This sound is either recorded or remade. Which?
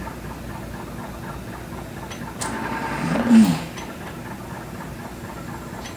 recorded